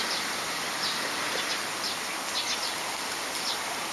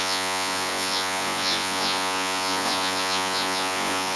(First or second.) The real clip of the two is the first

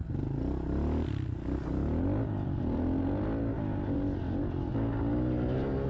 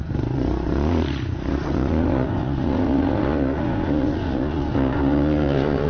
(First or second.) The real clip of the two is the first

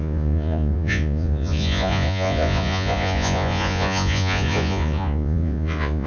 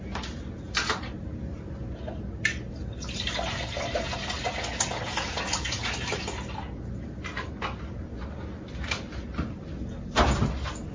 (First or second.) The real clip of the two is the second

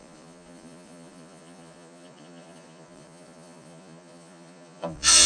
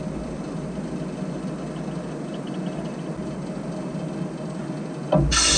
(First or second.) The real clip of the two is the second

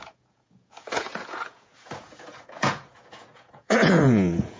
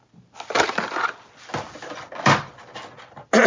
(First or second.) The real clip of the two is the second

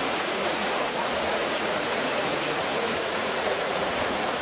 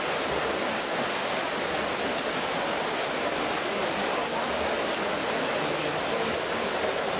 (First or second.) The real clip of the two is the second